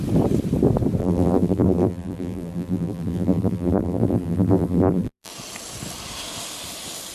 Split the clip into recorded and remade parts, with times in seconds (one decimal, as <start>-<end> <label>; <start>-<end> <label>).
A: 0.0-1.0 recorded; 1.0-5.3 remade; 5.3-7.1 recorded